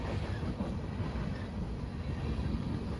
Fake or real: real